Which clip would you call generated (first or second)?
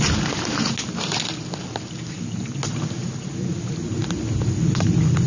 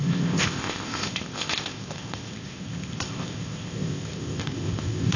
second